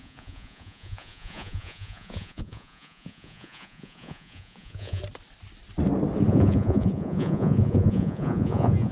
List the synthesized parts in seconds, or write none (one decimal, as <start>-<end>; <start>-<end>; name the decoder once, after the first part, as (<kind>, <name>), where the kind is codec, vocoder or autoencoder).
0.0-5.0 (vocoder, Vocos); 6.3-8.9